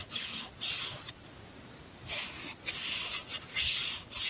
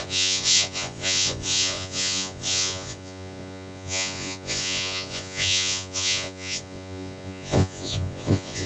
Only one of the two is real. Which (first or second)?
first